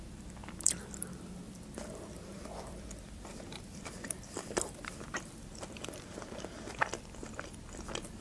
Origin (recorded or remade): remade